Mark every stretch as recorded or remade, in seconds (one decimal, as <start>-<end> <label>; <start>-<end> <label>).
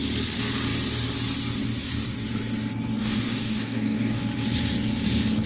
0.0-3.0 recorded; 3.0-4.2 remade; 4.2-5.5 recorded